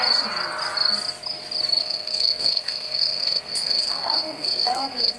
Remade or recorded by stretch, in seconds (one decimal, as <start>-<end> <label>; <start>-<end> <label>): 0.0-1.8 recorded; 1.8-5.2 remade